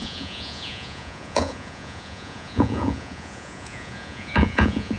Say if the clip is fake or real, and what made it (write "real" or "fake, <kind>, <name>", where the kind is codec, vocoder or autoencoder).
fake, vocoder, Vocos